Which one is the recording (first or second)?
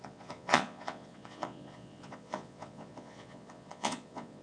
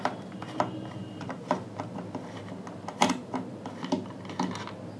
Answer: second